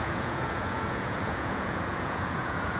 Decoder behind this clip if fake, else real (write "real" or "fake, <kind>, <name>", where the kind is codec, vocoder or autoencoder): fake, vocoder, Vocos